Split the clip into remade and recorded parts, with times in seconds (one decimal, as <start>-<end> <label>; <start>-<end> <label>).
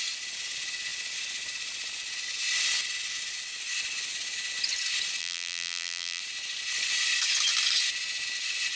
0.0-5.2 recorded; 5.2-6.2 remade; 6.2-8.8 recorded